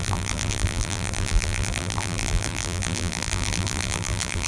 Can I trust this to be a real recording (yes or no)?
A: no